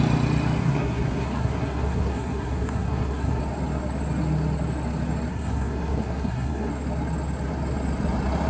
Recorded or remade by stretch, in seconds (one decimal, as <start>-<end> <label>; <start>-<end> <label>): 0.0-0.6 recorded; 0.6-3.4 remade; 3.4-5.3 recorded; 5.3-6.7 remade; 6.7-8.5 recorded